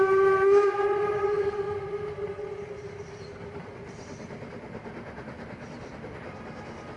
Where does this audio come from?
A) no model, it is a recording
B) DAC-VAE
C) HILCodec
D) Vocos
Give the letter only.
A